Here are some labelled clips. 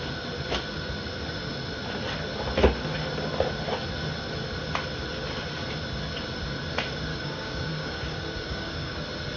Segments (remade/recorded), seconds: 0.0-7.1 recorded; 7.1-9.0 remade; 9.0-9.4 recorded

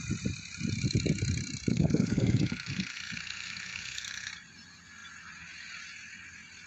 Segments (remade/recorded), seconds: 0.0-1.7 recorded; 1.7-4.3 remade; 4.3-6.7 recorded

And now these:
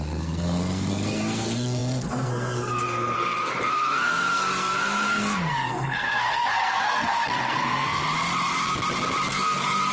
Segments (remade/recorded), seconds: 0.0-8.0 remade; 8.0-9.3 recorded; 9.3-9.9 remade

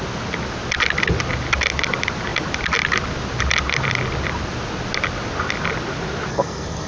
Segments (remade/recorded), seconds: 0.0-6.3 recorded; 6.3-6.9 remade

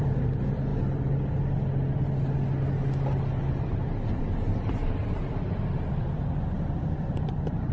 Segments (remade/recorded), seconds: 0.0-0.7 remade; 0.7-4.9 recorded; 4.9-7.7 remade

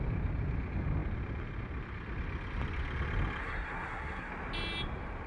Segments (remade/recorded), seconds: 0.0-3.4 recorded; 3.4-4.3 remade; 4.3-5.3 recorded